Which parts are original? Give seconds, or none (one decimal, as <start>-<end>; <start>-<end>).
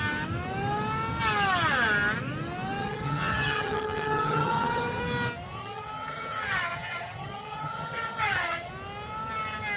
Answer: 0.0-2.8; 5.0-5.5; 8.7-9.8